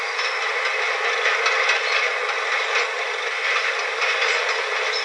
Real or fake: real